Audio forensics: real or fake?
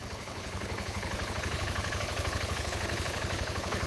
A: fake